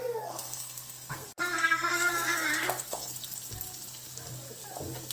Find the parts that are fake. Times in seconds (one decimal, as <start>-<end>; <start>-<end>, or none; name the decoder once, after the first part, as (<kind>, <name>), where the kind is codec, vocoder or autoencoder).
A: 0.0-3.1 (codec, SNAC)